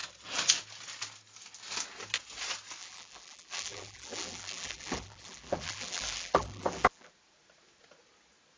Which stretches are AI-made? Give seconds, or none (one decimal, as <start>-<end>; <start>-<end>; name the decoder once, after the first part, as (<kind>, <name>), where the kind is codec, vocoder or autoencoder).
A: 2.8-7.1 (vocoder, BigVGAN v2)